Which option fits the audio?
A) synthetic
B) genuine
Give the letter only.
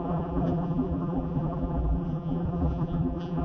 A